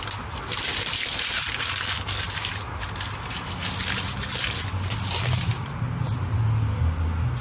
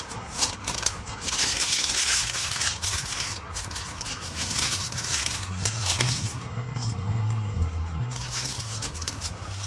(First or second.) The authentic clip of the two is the first